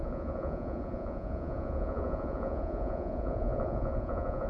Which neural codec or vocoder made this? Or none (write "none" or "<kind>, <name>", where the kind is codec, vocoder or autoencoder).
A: vocoder, Vocos